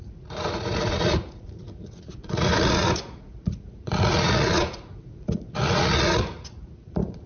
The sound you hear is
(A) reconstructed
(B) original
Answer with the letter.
A